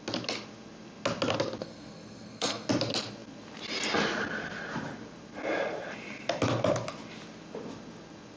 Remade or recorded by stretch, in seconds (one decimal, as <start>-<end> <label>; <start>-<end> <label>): 0.0-1.6 recorded; 1.6-2.7 remade; 2.7-8.4 recorded